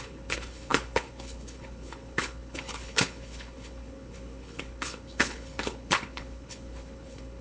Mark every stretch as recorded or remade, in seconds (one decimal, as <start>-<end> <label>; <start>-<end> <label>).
0.0-7.4 remade